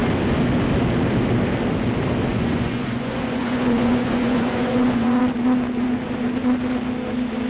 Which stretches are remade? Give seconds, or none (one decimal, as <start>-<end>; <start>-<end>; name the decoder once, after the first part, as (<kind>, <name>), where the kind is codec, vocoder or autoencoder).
2.3-5.2 (vocoder, Vocos)